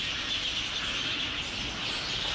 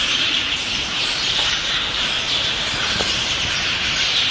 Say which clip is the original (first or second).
first